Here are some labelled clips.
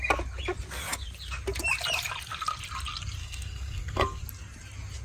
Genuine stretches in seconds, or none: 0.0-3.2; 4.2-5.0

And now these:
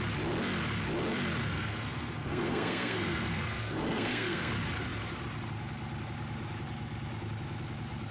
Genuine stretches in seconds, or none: 0.0-1.4; 4.5-8.1

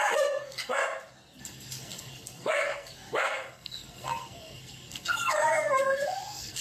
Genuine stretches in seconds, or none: 0.8-1.4

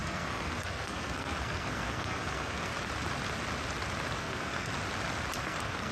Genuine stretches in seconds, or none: 2.7-4.2; 4.7-5.4

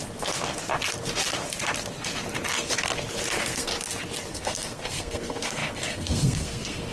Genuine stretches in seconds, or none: 0.0-3.3; 3.7-4.3